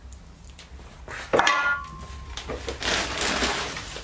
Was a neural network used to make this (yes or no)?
no